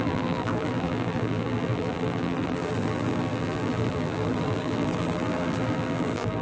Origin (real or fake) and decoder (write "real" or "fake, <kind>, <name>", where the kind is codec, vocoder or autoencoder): fake, vocoder, BigVGAN v2